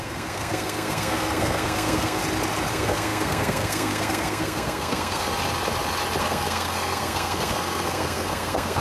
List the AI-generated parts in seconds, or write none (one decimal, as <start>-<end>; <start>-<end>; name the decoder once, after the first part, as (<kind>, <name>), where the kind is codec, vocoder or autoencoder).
0.0-2.2 (codec, SNAC); 2.7-5.3; 6.2-8.8